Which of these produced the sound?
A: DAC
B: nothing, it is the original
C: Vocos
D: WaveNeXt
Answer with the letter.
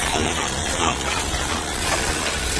C